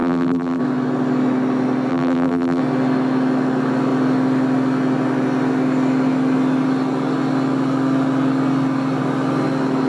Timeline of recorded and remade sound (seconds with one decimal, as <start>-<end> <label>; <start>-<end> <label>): 0.0-0.6 remade; 0.6-1.9 recorded; 1.9-2.6 remade; 2.6-9.9 recorded